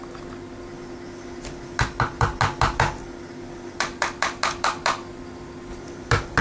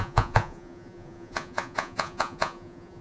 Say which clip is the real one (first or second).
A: first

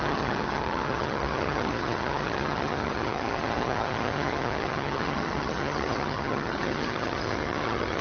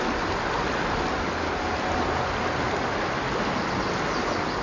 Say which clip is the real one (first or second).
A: second